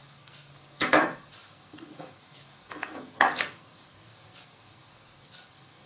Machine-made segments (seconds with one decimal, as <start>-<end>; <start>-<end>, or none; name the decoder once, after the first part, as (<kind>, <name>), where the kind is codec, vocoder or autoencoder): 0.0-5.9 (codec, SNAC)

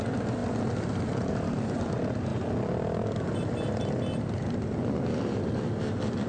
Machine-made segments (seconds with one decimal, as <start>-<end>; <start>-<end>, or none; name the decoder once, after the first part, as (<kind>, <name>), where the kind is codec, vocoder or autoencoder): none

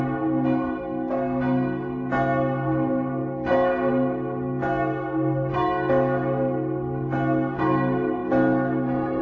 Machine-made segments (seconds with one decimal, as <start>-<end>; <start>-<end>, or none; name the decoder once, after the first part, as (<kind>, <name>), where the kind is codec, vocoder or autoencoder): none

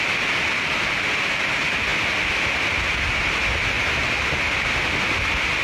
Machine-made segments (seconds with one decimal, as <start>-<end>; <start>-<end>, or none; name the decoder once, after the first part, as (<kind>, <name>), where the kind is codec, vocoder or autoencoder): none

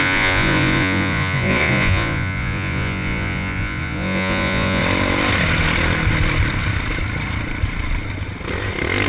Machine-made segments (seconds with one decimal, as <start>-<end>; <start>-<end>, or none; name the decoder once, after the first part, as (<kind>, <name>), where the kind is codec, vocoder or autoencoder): 0.0-4.8 (vocoder, Vocos)

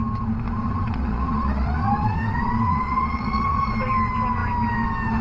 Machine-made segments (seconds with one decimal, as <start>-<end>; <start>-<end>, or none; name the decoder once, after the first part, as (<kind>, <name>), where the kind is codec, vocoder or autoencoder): 0.6-3.7 (vocoder, Vocos)